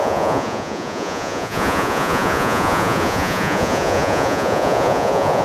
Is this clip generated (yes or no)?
yes